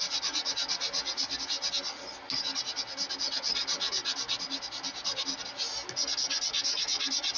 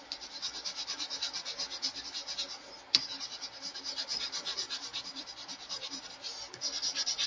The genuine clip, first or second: first